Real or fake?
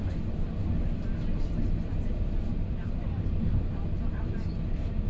real